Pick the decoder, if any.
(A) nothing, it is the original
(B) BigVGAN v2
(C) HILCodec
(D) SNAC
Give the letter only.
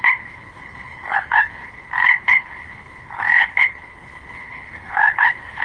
C